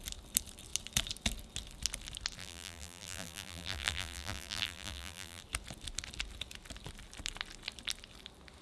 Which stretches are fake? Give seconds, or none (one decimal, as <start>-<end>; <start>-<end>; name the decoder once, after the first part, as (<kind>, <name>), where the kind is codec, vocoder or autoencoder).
2.4-5.4 (vocoder, BigVGAN v2)